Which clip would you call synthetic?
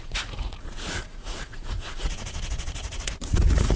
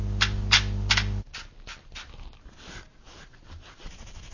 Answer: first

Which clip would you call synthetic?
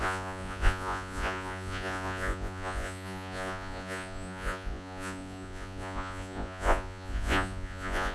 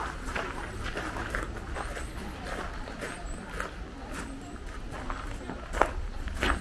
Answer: first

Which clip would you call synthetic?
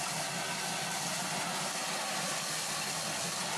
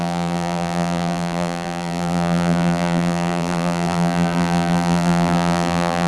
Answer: second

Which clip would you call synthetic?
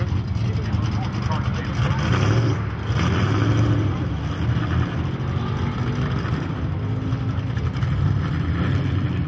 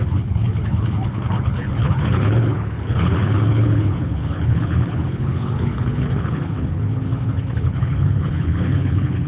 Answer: second